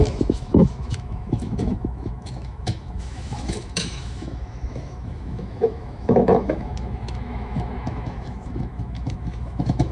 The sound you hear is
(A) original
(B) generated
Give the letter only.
B